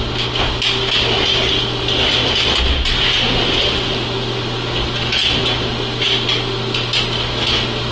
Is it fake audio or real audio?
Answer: real